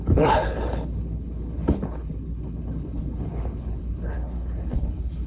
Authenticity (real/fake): fake